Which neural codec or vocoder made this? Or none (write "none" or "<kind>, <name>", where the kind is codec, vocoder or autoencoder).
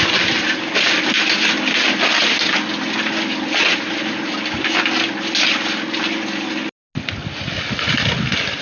none